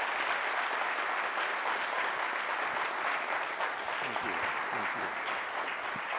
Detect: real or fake real